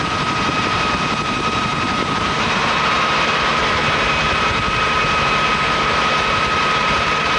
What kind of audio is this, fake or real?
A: fake